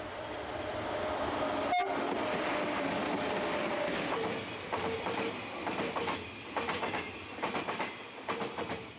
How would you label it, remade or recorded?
recorded